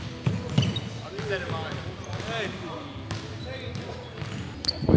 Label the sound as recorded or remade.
recorded